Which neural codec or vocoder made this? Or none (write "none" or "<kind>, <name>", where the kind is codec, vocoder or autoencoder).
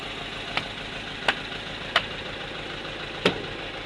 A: none